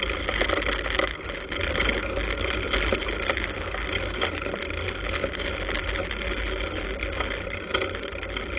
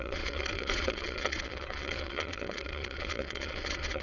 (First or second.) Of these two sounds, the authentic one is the first